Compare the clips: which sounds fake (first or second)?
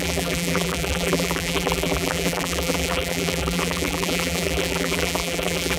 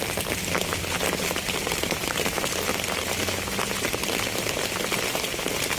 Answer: first